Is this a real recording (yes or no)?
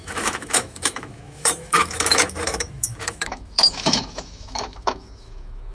no